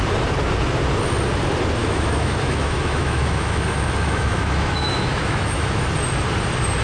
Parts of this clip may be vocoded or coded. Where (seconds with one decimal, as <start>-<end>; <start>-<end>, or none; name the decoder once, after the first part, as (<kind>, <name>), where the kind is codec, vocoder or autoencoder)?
1.8-5.8 (autoencoder, DAC-VAE)